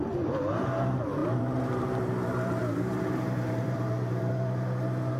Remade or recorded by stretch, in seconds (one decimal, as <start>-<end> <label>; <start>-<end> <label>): 0.0-1.2 recorded; 1.2-4.3 remade; 4.3-5.2 recorded